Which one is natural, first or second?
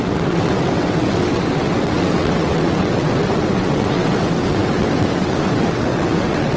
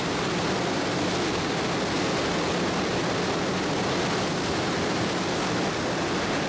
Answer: second